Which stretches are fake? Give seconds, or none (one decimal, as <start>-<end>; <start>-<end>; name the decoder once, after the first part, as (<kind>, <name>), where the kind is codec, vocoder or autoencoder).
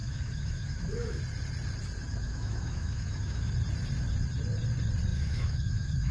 0.0-1.2 (autoencoder, DAC-VAE); 2.1-3.5; 5.1-6.1